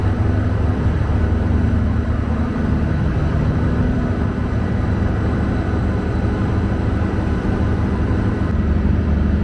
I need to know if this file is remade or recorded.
remade